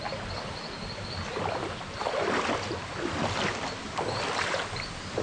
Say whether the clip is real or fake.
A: real